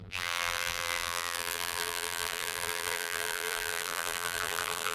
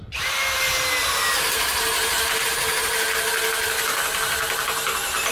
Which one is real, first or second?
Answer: second